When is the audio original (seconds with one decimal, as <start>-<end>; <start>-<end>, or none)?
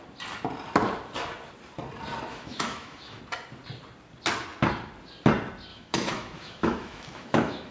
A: 0.0-2.3; 3.2-5.7